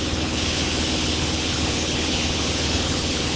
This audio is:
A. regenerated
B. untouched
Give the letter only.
A